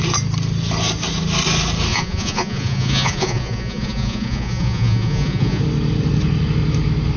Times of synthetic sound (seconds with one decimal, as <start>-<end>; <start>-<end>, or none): 1.9-5.6